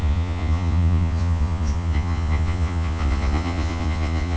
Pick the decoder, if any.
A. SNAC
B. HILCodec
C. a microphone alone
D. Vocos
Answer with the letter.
D